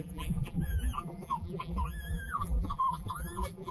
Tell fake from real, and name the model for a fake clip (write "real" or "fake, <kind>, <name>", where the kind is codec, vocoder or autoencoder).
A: fake, vocoder, BigVGAN v2